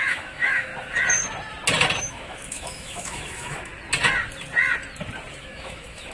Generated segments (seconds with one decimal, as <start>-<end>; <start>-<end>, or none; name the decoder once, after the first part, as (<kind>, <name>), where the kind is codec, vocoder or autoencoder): 0.0-0.7 (autoencoder, DAC-VAE); 2.0-3.7; 5.4-6.1